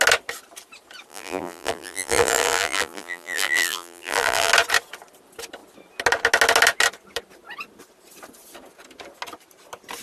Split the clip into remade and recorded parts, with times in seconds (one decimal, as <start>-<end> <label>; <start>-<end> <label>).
0.0-1.1 recorded; 1.1-4.5 remade; 4.5-10.0 recorded